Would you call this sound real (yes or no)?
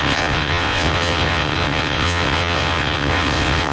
no